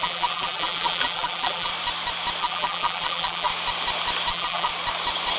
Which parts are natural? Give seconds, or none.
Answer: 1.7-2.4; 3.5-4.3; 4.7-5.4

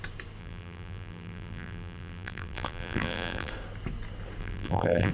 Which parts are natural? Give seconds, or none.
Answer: 0.0-0.4; 3.5-4.4

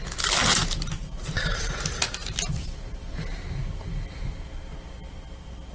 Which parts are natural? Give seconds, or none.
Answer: 0.0-1.0; 1.8-5.7